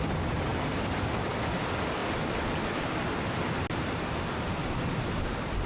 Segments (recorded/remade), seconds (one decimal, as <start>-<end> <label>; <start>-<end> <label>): 0.0-5.7 recorded